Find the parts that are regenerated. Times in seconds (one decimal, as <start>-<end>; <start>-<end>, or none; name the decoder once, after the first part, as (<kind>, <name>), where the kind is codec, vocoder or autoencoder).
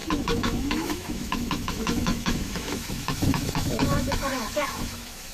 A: 0.0-5.3 (autoencoder, DAC-VAE)